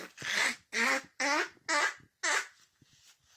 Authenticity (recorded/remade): recorded